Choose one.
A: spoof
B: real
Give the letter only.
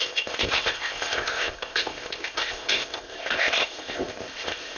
A